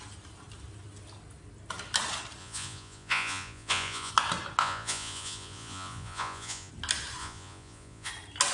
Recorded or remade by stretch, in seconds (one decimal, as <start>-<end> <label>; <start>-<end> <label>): 0.0-2.4 recorded; 2.4-4.1 remade; 4.1-4.6 recorded; 4.6-6.7 remade; 6.7-7.2 recorded; 7.2-8.1 remade; 8.1-8.5 recorded